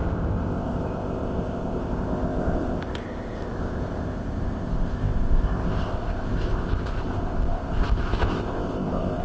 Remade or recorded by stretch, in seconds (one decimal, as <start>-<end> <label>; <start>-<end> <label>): 0.0-9.2 remade

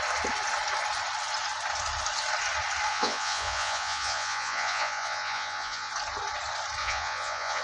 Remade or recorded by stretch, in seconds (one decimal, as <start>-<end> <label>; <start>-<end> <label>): 0.0-2.9 recorded; 2.9-5.9 remade; 5.9-6.8 recorded; 6.8-7.6 remade